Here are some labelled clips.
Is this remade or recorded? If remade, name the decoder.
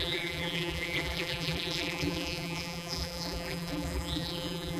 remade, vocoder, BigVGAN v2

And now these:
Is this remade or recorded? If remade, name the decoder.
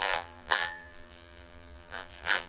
remade, vocoder, BigVGAN v2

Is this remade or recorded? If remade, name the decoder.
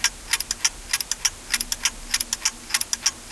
recorded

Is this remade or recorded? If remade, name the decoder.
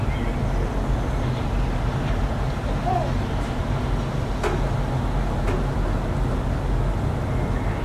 recorded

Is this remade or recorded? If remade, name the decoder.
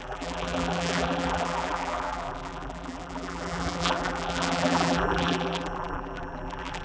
remade, vocoder, BigVGAN v2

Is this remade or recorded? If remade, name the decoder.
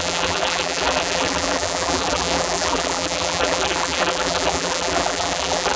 remade, vocoder, BigVGAN v2